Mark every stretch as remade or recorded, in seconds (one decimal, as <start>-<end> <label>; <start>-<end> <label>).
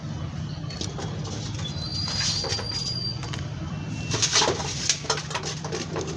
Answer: 0.0-6.2 recorded